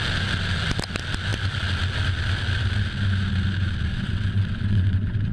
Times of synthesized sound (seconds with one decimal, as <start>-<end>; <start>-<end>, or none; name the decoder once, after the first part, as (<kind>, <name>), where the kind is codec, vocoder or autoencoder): 3.9-5.3 (vocoder, WaveNeXt)